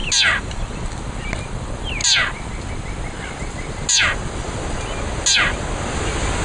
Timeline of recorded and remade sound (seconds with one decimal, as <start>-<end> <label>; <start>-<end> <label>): 0.0-6.4 recorded